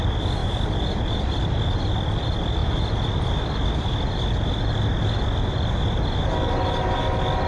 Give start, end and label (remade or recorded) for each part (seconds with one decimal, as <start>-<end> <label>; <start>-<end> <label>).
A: 0.0-7.5 recorded